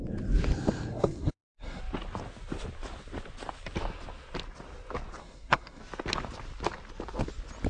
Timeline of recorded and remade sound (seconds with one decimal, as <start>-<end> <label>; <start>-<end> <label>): 0.0-0.9 recorded; 0.9-1.8 remade; 1.8-5.2 recorded; 5.2-5.8 remade; 5.8-7.7 recorded